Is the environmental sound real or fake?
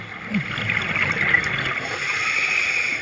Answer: real